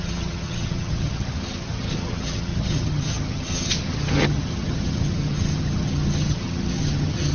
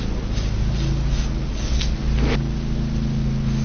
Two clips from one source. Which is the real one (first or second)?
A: second